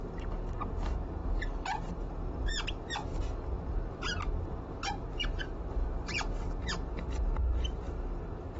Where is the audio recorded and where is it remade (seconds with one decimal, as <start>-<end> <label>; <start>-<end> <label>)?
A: 0.0-8.6 recorded